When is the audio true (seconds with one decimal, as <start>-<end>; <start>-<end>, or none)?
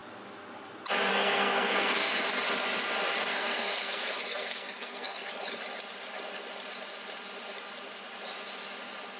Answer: 0.0-1.1; 2.1-3.3; 5.3-9.2